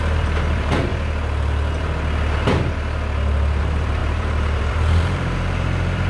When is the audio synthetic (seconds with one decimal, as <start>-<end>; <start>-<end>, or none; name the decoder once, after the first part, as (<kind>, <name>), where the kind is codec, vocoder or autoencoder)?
0.0-0.9 (vocoder, BigVGAN v2); 3.6-6.1